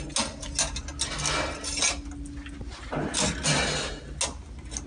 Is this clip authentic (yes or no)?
yes